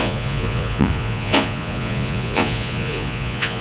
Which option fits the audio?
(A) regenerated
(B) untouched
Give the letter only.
A